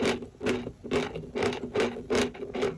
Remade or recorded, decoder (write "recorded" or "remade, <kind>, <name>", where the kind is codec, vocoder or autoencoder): recorded